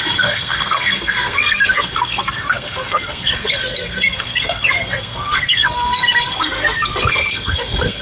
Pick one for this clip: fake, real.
fake